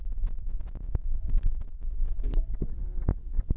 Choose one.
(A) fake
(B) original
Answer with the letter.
B